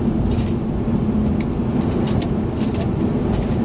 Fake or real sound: real